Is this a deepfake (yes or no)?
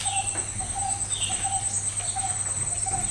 no